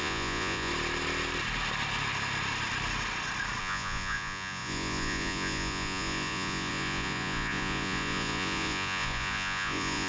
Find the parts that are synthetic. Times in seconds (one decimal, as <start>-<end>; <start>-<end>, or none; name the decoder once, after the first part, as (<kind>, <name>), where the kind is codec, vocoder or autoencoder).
0.0-0.7 (vocoder, Vocos); 3.6-10.1